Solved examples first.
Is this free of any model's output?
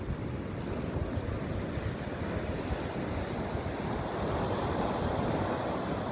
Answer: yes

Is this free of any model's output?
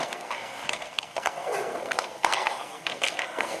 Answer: no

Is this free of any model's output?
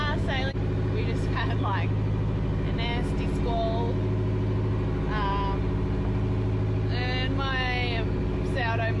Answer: yes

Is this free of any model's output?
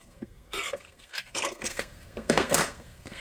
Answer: no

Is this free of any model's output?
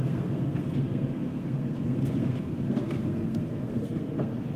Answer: no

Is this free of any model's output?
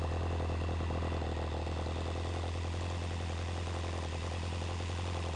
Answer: yes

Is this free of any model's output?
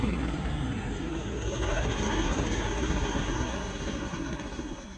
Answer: no